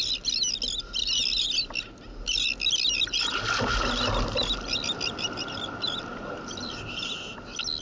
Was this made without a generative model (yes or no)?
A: yes